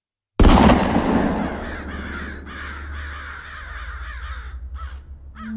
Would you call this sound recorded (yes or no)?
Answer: yes